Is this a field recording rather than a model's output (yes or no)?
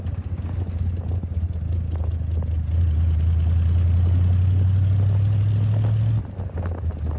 yes